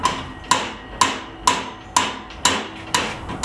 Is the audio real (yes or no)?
yes